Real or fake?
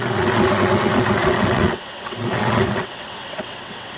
fake